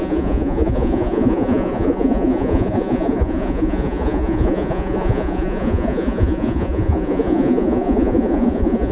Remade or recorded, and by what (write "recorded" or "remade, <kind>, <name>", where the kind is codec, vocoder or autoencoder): remade, vocoder, Vocos